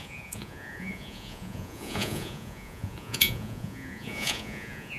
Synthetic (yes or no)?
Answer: yes